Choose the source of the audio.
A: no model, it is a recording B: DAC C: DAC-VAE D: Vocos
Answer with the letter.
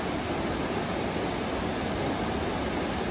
A